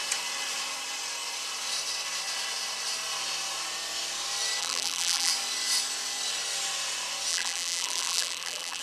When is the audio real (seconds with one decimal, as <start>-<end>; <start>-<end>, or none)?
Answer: 0.0-4.6; 5.3-7.3